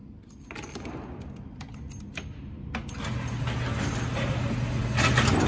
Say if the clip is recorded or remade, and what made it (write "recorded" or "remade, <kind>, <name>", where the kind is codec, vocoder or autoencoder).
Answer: recorded